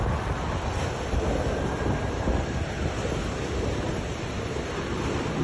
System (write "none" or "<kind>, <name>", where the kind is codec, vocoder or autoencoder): none